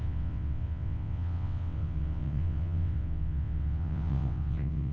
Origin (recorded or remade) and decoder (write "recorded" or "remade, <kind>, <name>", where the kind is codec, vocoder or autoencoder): remade, vocoder, WaveNeXt